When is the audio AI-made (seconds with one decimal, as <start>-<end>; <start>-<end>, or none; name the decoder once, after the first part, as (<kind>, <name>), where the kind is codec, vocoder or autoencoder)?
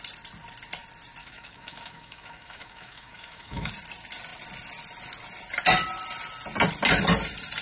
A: 1.2-3.7 (autoencoder, DAC-VAE)